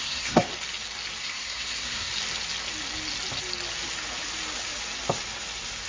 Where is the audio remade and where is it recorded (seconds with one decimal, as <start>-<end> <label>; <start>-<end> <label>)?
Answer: 0.0-0.5 remade; 0.5-1.2 recorded; 1.2-2.1 remade; 2.1-5.9 recorded